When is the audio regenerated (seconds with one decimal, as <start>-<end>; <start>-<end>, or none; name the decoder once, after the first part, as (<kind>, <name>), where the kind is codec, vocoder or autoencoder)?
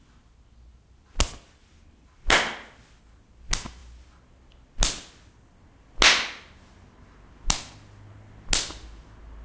none